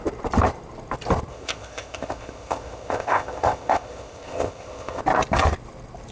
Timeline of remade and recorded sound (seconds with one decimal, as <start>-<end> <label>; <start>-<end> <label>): 0.0-1.3 recorded; 1.3-5.0 remade; 5.0-6.1 recorded